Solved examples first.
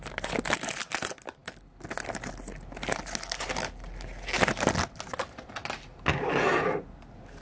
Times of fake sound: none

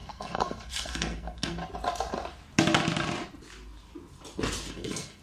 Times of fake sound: 0.0-1.6 (codec, SNAC); 4.7-5.2

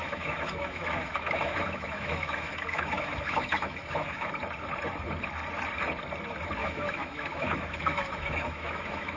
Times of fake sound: 0.0-4.3 (autoencoder, DAC-VAE); 6.6-9.2

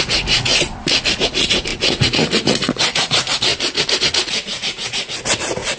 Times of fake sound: 0.0-0.5 (vocoder, Vocos); 1.1-3.5; 4.0-5.8